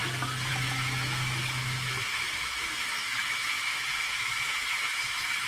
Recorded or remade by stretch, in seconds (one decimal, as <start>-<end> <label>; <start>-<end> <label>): 0.0-0.5 recorded; 0.5-5.5 remade